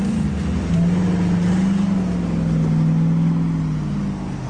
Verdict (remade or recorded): recorded